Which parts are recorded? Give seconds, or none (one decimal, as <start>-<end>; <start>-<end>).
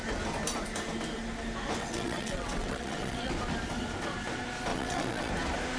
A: 0.0-1.8; 3.3-4.7; 5.3-5.8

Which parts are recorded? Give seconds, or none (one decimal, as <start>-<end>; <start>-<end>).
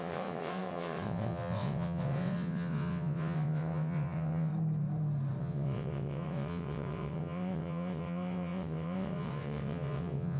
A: 4.5-5.4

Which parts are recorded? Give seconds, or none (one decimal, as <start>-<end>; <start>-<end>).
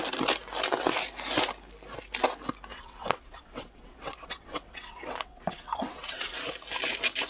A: 0.0-2.7; 6.3-7.3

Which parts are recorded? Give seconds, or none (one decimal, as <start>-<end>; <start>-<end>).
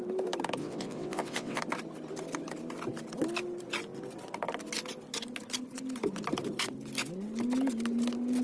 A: 0.0-0.6; 1.6-8.4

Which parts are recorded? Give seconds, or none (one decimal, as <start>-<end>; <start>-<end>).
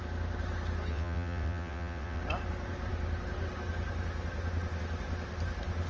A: 0.0-0.9; 2.2-5.9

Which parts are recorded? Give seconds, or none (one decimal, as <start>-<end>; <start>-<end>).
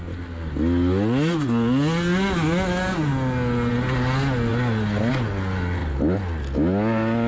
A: 0.0-7.3